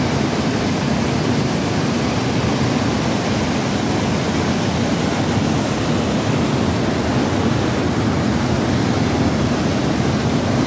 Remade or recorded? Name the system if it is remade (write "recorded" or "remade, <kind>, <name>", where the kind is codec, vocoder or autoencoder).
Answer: recorded